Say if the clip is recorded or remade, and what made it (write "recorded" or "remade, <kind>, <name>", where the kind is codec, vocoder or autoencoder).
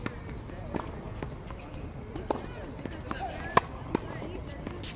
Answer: recorded